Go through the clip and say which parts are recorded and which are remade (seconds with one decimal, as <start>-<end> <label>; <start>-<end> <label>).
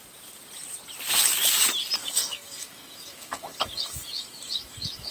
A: 0.0-2.0 recorded; 2.0-5.1 remade